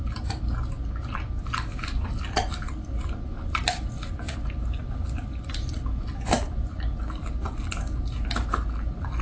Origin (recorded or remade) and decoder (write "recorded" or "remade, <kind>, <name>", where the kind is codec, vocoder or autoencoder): recorded